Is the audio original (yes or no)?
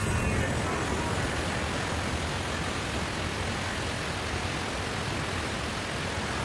yes